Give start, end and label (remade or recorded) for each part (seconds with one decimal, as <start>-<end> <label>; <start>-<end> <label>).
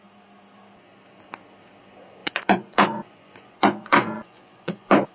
0.0-2.2 recorded; 2.2-5.1 remade